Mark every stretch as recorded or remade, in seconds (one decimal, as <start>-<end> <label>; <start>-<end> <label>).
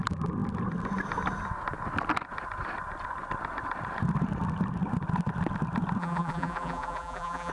0.0-6.0 recorded; 6.0-7.5 remade